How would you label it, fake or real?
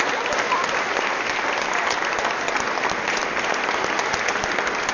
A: real